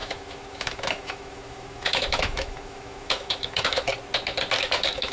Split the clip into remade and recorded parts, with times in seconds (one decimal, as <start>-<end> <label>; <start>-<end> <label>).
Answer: 0.0-3.9 remade; 3.9-4.6 recorded; 4.6-5.1 remade